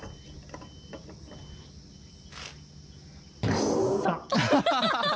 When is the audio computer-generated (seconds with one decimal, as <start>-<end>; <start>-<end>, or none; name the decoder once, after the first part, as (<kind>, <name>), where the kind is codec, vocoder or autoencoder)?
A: none